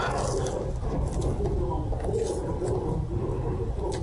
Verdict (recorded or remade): recorded